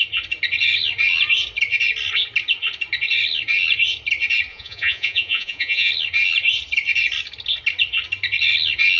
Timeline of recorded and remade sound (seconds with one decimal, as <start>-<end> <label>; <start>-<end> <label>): 0.0-4.5 recorded; 4.5-5.9 remade; 5.9-9.0 recorded